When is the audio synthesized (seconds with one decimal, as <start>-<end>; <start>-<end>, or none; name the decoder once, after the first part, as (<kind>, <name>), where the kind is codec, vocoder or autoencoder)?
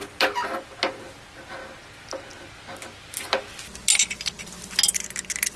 none